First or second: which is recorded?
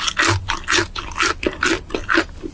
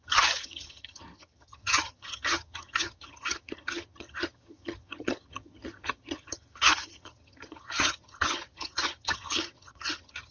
first